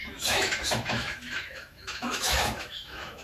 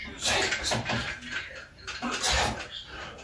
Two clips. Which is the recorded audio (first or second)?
second